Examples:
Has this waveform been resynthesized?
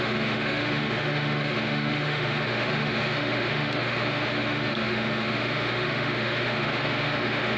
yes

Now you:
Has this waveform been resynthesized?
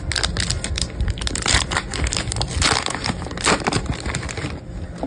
no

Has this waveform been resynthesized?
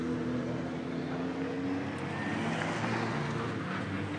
no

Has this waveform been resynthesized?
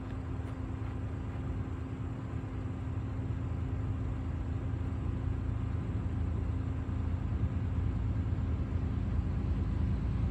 no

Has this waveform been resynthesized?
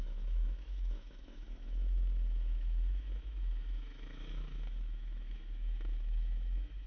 yes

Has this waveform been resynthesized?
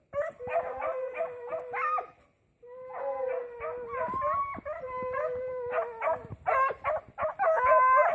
no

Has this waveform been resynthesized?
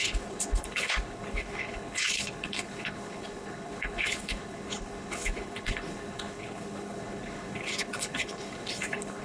yes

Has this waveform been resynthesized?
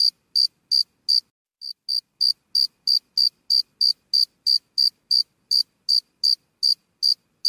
no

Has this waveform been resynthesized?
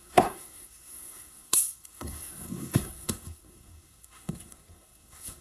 yes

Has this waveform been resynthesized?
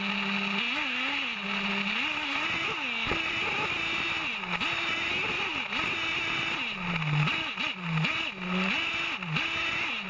no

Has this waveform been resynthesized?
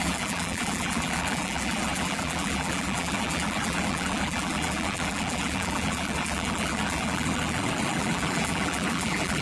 yes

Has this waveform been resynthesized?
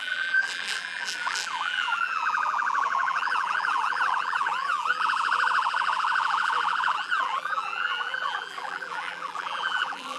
yes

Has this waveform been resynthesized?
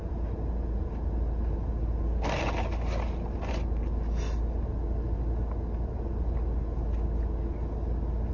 no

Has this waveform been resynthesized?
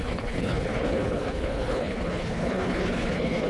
yes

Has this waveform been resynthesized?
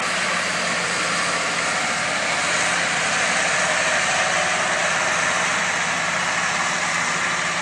no